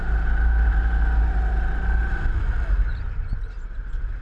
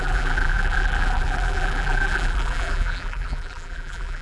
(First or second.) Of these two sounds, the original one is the first